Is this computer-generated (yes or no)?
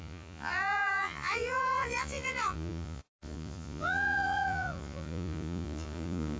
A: yes